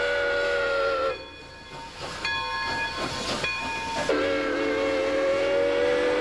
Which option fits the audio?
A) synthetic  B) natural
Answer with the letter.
B